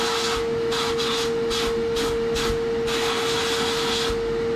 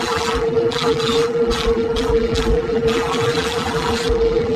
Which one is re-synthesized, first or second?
second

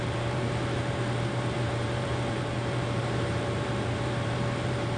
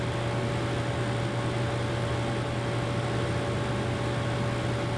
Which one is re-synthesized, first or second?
first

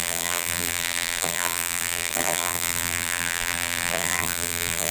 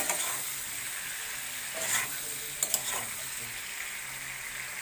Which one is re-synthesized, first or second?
first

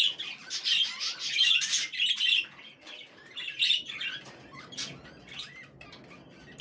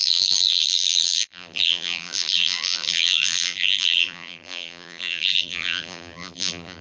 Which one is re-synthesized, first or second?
second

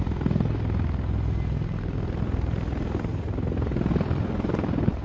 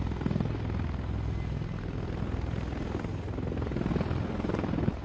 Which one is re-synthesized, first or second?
first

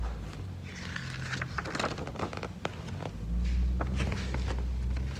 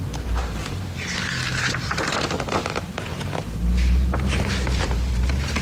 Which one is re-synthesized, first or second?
second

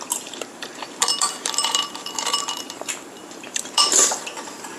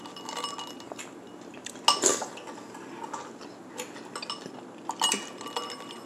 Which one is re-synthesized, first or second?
first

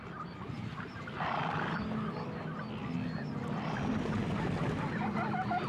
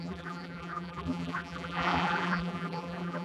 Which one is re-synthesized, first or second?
second